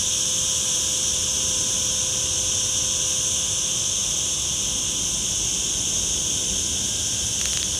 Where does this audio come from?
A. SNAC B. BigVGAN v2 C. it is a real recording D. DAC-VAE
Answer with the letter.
C